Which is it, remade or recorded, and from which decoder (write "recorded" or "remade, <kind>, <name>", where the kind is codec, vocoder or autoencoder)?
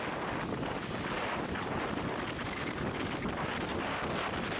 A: recorded